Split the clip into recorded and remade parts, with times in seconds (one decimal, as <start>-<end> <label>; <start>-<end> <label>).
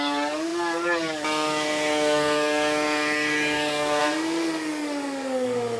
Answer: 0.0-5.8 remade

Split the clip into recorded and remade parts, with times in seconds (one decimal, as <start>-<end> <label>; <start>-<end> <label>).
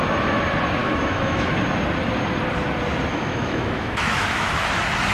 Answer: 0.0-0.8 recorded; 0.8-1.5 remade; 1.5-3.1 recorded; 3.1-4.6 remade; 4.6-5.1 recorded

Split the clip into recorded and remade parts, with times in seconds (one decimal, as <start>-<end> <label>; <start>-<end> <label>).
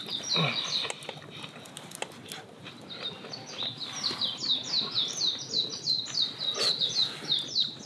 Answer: 0.0-7.9 recorded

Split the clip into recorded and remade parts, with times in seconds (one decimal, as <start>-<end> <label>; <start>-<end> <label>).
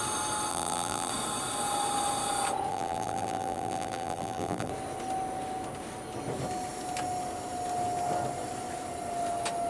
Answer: 0.0-0.5 recorded; 0.5-1.1 remade; 1.1-2.7 recorded; 2.7-4.7 remade; 4.7-9.7 recorded